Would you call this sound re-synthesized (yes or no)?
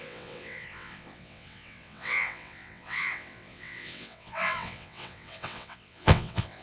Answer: yes